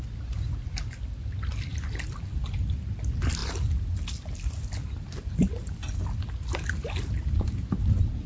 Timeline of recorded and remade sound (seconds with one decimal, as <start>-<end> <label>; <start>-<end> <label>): 0.0-8.3 recorded